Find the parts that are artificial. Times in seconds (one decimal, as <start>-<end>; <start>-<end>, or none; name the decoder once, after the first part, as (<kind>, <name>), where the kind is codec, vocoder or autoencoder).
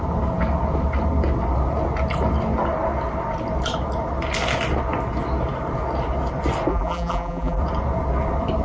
6.7-7.6 (vocoder, BigVGAN v2)